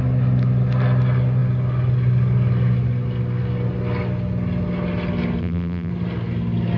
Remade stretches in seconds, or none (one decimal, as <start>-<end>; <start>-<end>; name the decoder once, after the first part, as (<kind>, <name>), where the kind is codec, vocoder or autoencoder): 5.4-5.9 (vocoder, BigVGAN v2)